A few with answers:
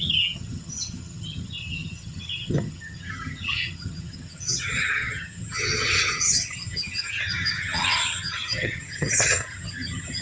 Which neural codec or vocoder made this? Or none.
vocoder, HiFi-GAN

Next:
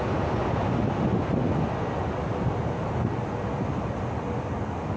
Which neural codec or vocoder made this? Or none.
none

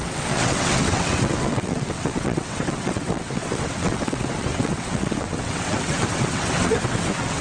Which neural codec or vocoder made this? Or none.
vocoder, WaveNeXt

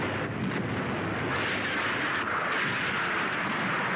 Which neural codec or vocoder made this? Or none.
none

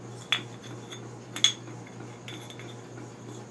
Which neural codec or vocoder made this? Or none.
none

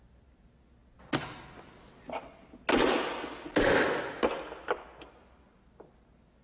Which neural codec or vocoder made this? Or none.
none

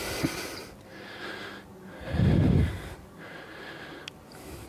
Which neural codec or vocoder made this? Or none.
none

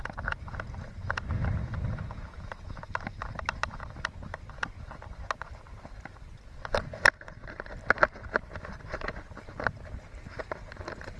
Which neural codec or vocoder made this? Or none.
none